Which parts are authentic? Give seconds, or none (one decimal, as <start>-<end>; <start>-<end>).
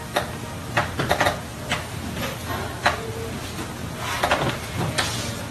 0.0-5.5